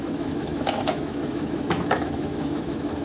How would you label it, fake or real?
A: fake